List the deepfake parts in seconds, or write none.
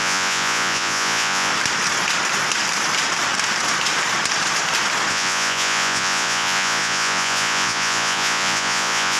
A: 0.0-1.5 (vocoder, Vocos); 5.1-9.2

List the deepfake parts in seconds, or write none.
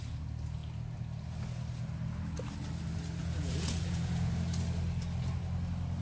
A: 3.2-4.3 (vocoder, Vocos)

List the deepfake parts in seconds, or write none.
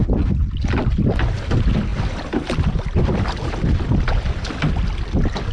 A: none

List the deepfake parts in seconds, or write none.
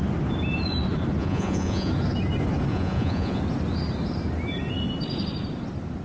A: 1.2-1.9 (vocoder, Vocos); 2.7-3.4